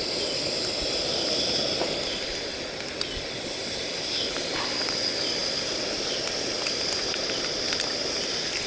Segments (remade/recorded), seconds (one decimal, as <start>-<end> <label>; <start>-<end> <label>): 0.0-8.7 recorded